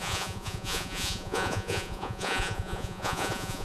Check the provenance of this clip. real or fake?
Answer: fake